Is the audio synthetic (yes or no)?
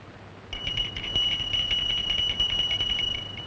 no